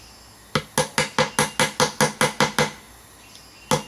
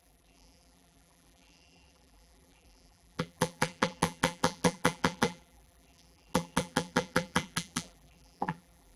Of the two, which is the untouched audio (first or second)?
first